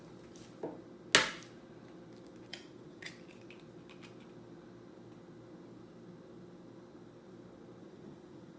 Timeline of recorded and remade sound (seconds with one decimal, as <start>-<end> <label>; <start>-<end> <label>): 0.0-2.5 recorded; 2.5-3.1 remade; 3.1-7.8 recorded; 7.8-8.6 remade